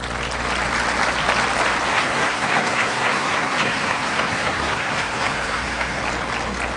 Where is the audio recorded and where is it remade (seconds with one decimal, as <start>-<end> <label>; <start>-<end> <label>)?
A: 0.0-1.9 recorded; 1.9-6.0 remade; 6.0-6.8 recorded